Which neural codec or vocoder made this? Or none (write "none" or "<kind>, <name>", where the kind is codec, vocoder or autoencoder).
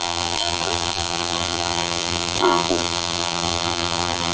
vocoder, BigVGAN v2